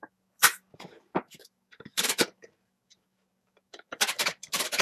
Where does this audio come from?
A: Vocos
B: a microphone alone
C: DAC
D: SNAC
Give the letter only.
C